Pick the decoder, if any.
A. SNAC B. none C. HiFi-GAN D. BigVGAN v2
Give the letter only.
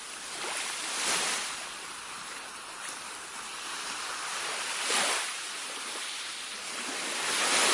B